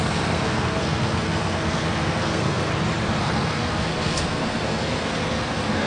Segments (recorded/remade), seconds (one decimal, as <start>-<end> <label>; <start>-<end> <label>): 0.0-2.7 remade; 2.7-3.2 recorded; 3.2-5.9 remade